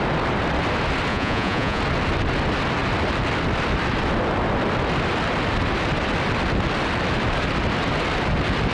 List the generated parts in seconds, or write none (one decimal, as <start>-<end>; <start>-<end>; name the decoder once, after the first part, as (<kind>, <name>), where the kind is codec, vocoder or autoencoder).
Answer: 1.1-1.8 (vocoder, Vocos)